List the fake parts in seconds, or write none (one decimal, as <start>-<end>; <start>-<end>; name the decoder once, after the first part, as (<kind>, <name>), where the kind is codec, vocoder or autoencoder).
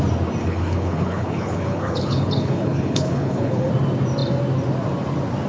0.4-3.7 (codec, HILCodec)